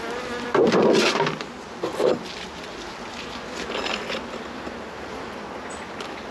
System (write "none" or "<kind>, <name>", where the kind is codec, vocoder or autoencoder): none